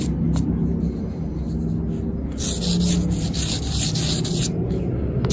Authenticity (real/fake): real